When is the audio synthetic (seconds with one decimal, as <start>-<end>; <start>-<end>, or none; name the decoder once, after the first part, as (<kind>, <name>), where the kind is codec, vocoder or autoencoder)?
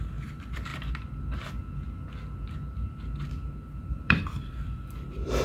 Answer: 0.0-0.7 (vocoder, BigVGAN v2); 3.9-5.4